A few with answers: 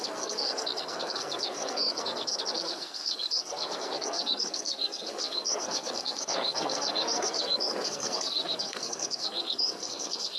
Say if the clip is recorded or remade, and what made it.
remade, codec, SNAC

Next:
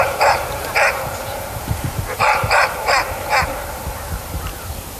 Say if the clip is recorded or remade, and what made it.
remade, vocoder, BigVGAN v2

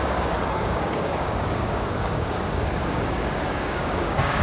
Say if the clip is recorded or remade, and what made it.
remade, codec, DAC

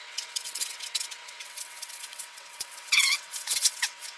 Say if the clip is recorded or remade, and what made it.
remade, vocoder, WaveNeXt